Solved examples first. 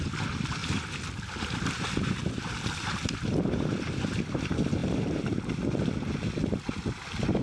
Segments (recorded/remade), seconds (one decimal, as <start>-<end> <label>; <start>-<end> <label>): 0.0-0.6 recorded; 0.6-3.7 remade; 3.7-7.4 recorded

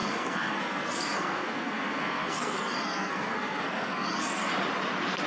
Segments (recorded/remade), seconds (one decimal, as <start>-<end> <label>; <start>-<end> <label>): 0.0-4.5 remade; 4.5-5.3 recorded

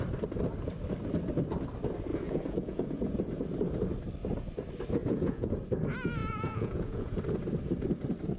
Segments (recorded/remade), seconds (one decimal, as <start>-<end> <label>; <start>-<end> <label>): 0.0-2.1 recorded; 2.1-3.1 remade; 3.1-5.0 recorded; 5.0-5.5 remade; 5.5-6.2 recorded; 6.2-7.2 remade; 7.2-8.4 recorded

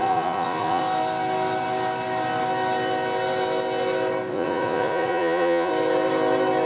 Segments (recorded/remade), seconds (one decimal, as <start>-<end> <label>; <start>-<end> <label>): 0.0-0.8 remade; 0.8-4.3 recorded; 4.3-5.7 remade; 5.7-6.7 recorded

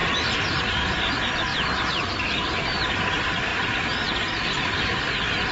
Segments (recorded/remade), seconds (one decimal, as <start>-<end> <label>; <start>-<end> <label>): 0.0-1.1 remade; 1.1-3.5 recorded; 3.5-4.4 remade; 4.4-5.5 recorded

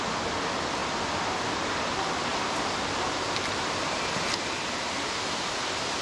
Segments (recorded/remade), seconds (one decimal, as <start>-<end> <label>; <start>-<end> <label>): 0.0-2.3 recorded; 2.3-4.6 remade; 4.6-6.0 recorded

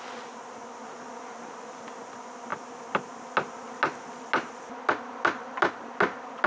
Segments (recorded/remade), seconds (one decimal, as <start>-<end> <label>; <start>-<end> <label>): 0.0-6.5 recorded